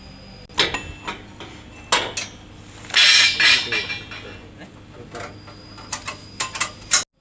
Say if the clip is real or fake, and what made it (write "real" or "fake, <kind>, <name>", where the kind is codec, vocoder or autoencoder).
real